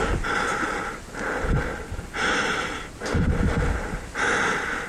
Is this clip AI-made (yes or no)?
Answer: no